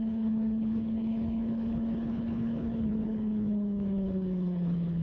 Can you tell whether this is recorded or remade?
remade